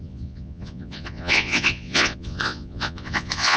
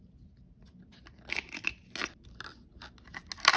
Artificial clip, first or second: first